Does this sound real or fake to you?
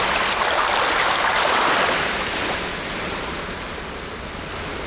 real